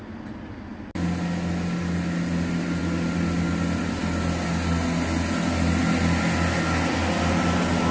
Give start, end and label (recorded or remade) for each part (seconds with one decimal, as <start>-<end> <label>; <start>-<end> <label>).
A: 0.0-7.9 recorded